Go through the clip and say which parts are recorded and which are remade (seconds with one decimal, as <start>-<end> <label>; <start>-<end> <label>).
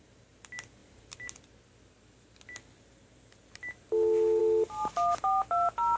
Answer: 0.0-6.0 recorded